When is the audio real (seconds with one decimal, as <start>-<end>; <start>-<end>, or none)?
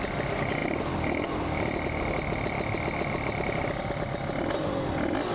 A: 0.0-5.3